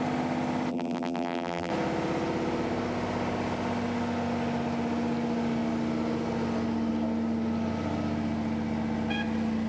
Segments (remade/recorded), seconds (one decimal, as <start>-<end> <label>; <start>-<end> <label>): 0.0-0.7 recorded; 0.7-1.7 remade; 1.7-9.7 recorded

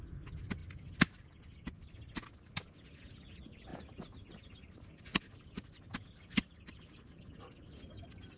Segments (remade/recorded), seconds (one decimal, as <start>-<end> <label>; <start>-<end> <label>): 0.0-8.4 recorded

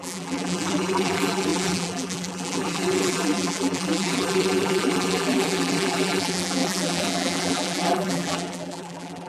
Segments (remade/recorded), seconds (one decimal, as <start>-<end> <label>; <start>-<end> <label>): 0.0-9.3 remade

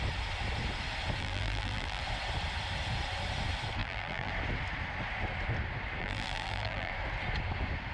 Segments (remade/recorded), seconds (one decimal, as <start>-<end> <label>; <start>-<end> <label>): 0.0-1.2 recorded; 1.2-2.0 remade; 2.0-3.8 recorded; 3.8-4.3 remade; 4.3-6.0 recorded; 6.0-6.9 remade; 6.9-7.9 recorded

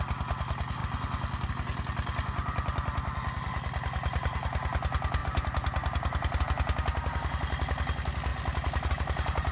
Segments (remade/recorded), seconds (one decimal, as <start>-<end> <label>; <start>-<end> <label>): 0.0-9.5 recorded

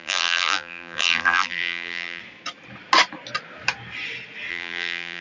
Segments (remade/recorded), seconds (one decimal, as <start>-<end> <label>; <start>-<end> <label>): 0.0-2.2 remade; 2.2-4.5 recorded; 4.5-5.2 remade

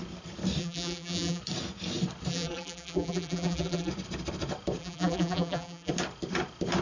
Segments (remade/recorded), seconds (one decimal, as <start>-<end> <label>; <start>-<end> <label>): 0.0-0.6 recorded; 0.6-1.4 remade; 1.4-2.3 recorded; 2.3-3.9 remade; 3.9-4.8 recorded; 4.8-5.9 remade; 5.9-6.8 recorded